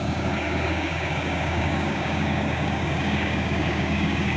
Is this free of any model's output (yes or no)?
no